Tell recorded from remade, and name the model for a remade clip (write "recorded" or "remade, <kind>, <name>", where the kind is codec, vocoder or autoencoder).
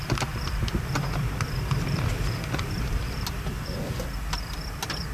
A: remade, vocoder, BigVGAN v2